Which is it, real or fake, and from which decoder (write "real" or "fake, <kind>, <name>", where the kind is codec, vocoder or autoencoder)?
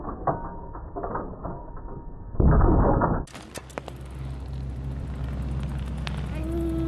real